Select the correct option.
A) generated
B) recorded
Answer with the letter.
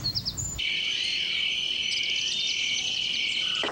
B